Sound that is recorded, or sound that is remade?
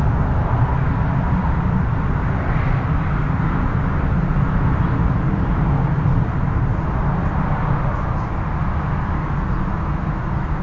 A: recorded